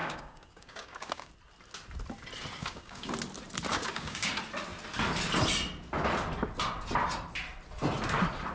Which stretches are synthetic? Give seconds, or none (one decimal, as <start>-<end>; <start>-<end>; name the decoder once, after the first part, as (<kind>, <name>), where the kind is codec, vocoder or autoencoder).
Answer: 0.0-1.3 (codec, DAC); 2.6-3.1; 3.7-4.3